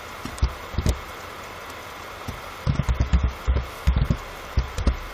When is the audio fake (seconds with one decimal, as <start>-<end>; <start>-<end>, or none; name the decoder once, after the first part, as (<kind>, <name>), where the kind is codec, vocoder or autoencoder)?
none